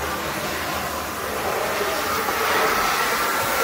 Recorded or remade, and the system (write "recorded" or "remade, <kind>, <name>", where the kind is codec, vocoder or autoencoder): recorded